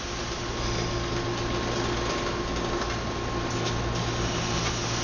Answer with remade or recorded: recorded